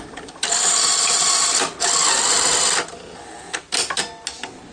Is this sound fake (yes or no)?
no